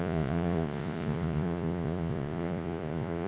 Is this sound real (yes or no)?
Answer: no